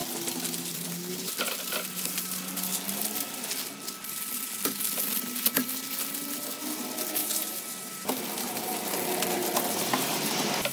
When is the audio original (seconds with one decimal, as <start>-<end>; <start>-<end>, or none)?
0.0-10.7